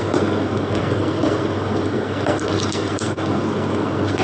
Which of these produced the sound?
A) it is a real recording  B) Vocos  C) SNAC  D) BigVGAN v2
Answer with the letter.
C